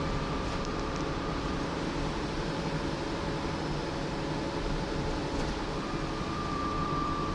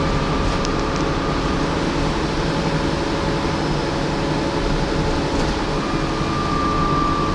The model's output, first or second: first